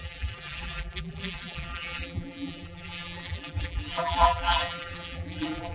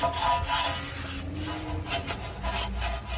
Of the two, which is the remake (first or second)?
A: first